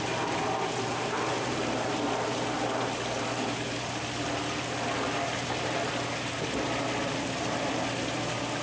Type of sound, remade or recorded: recorded